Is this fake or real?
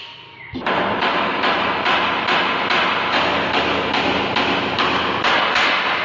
real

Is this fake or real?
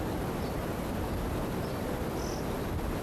real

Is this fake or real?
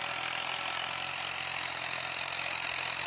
real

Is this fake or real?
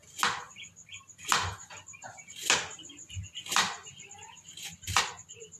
real